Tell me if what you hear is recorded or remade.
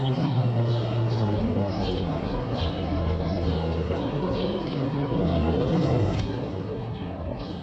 remade